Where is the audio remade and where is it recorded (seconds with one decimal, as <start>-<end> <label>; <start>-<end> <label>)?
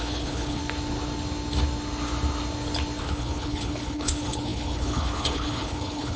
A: 0.0-0.6 remade; 0.6-3.0 recorded; 3.0-6.2 remade